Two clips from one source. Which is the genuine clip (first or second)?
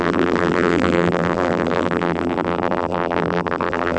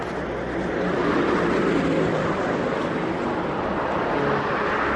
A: second